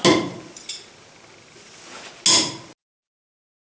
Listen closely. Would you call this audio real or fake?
real